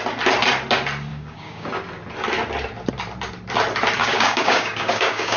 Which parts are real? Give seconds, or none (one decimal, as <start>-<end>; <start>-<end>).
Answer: 0.0-1.1; 1.7-4.0